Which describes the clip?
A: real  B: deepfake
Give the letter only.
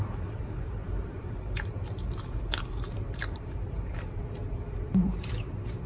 B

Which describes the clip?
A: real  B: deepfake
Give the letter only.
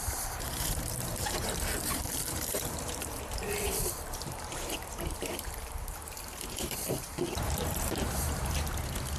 B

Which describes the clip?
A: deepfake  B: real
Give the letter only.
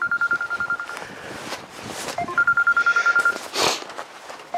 A